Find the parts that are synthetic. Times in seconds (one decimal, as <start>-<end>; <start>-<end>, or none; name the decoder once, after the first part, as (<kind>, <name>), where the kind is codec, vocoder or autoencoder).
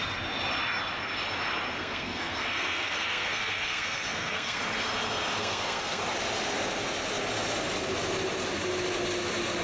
1.8-4.6 (codec, SNAC); 5.4-6.0